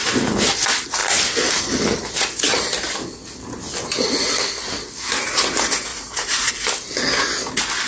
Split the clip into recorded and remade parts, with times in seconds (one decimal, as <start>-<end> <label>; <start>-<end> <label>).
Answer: 0.0-5.9 recorded; 5.9-6.5 remade; 6.5-7.9 recorded